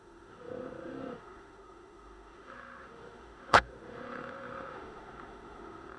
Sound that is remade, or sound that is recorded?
remade